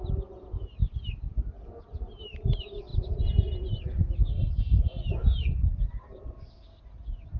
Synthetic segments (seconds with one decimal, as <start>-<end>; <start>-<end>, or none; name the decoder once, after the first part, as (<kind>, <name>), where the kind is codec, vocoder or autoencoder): none